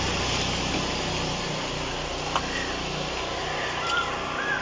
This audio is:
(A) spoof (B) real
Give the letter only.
B